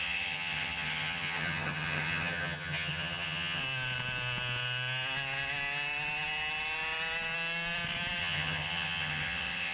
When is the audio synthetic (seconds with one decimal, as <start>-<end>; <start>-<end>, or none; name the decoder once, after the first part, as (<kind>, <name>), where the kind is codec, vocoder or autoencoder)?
0.0-3.6 (vocoder, HiFi-GAN); 8.2-9.7

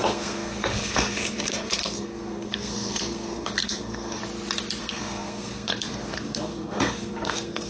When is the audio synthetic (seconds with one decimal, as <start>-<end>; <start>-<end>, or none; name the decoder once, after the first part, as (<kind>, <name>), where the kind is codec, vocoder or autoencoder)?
0.0-4.2 (codec, SNAC); 4.8-7.7